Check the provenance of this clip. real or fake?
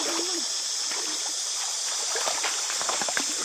real